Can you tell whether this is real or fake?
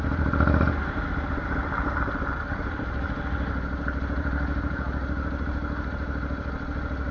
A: real